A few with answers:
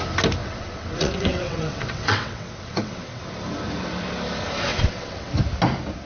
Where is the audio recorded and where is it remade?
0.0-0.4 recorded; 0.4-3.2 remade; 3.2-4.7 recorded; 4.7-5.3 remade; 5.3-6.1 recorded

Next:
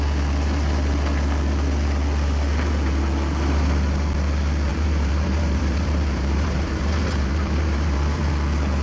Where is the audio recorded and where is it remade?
0.0-4.7 recorded; 4.7-8.3 remade; 8.3-8.8 recorded

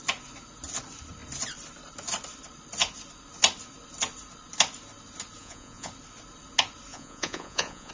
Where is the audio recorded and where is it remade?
0.0-5.4 recorded; 5.4-5.9 remade; 5.9-6.9 recorded; 6.9-7.9 remade

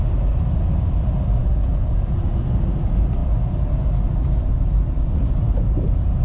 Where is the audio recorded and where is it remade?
0.0-1.4 recorded; 1.4-2.4 remade; 2.4-6.2 recorded

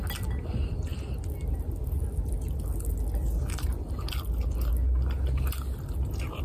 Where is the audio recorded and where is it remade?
0.0-6.4 recorded